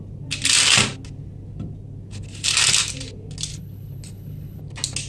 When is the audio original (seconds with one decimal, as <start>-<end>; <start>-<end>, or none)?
0.0-3.5; 4.6-5.1